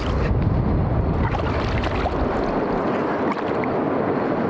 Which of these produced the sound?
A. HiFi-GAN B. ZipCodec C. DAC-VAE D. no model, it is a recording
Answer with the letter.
D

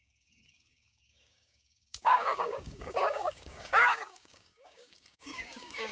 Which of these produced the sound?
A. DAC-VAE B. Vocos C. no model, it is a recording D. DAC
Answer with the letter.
D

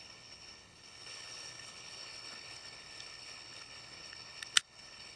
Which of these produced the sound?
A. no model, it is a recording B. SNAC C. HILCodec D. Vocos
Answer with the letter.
C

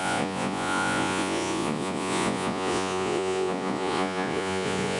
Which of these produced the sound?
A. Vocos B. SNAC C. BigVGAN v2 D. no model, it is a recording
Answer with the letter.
A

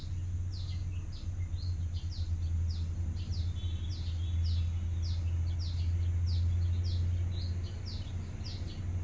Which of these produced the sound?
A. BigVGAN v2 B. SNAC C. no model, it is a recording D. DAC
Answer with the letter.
C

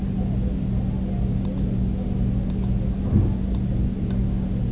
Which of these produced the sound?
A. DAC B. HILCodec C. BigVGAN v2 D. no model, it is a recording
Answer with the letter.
D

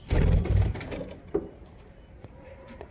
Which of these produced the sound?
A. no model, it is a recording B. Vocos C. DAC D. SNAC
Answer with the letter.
A